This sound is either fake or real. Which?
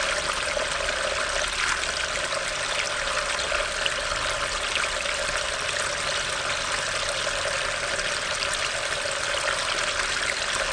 real